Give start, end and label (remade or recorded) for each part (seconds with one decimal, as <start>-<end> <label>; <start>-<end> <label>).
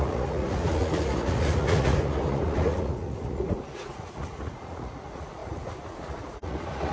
0.0-6.9 remade